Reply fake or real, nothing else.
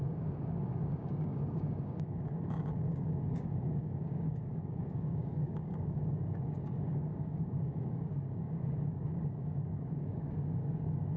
fake